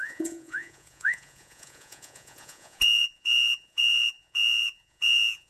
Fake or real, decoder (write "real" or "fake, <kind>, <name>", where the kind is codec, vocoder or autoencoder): fake, vocoder, Vocos